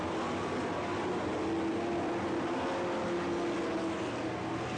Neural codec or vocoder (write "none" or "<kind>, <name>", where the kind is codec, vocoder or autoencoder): none